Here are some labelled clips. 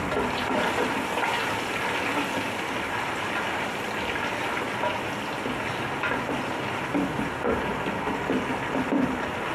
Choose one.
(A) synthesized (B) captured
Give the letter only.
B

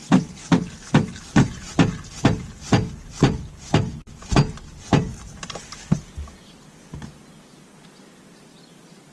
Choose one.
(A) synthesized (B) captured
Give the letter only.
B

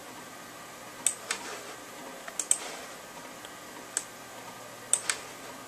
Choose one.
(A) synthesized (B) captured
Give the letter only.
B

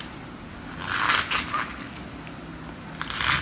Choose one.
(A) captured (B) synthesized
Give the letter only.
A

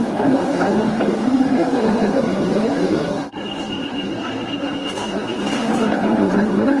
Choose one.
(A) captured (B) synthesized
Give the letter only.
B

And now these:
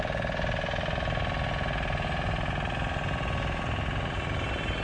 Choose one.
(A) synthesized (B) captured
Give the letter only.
B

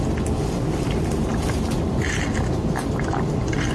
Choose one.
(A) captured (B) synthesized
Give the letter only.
A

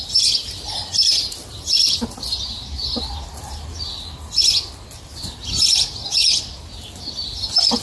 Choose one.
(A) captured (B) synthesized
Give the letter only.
A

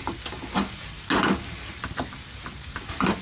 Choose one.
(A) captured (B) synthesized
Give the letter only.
A